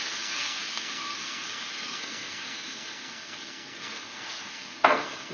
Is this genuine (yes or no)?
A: no